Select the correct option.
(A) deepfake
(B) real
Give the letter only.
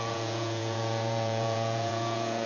A